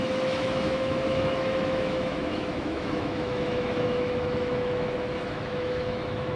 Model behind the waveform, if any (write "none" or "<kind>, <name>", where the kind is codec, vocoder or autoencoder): autoencoder, DAC-VAE